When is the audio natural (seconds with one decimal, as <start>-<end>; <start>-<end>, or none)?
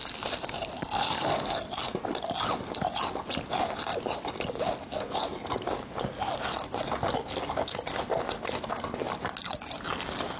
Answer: 0.0-10.4